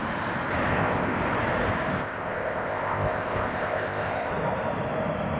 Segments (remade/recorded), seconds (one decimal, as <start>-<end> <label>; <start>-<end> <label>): 0.0-0.7 recorded; 0.7-1.2 remade; 1.2-1.9 recorded; 1.9-4.3 remade; 4.3-5.4 recorded